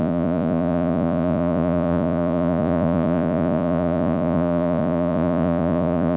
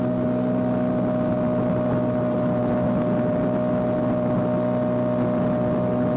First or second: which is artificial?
first